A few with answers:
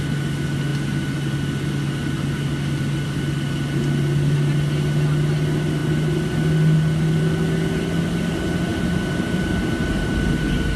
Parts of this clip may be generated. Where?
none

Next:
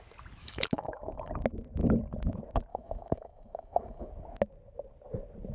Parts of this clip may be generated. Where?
0.4-1.3 (autoencoder, DAC-VAE); 2.7-4.1

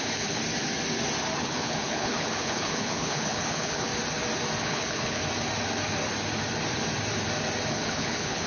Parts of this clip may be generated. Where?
0.0-0.4 (codec, HILCodec); 1.4-3.9; 4.6-5.2; 7.7-8.5

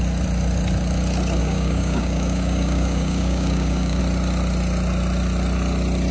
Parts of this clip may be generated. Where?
1.4-4.0 (codec, DAC)

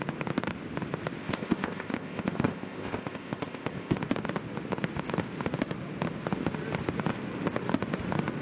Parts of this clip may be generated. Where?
1.2-4.0 (codec, ZipCodec)

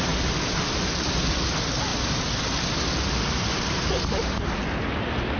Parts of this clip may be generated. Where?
none

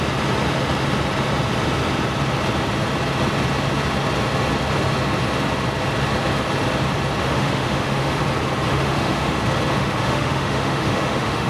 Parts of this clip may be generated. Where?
7.2-8.2 (autoencoder, DAC-VAE); 8.7-9.4; 9.8-11.5

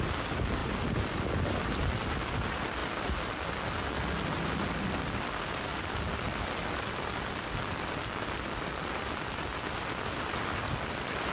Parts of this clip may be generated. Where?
0.6-2.0 (vocoder, BigVGAN v2)